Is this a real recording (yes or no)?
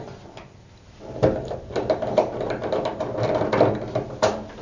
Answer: yes